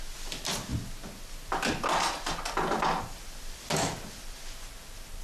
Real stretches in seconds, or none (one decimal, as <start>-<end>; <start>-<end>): 0.0-5.2